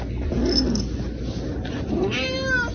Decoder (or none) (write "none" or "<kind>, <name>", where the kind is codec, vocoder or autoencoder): none